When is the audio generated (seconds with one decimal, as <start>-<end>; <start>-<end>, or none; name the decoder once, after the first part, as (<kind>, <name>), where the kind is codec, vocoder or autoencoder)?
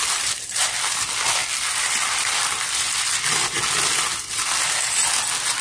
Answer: none